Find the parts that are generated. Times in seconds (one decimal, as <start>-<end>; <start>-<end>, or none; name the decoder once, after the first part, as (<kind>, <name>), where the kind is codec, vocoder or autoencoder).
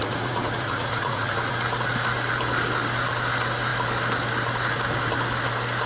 0.0-1.5 (vocoder, Vocos)